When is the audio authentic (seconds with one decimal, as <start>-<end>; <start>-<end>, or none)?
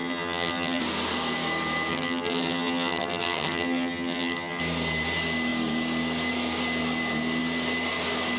0.8-1.9; 4.6-8.4